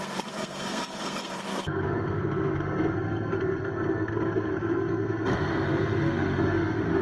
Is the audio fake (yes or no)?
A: yes